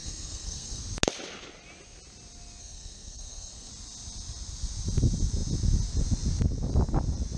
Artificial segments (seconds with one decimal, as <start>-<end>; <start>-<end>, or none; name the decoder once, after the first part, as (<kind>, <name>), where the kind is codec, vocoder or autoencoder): 0.0-0.8 (codec, SNAC); 2.6-3.7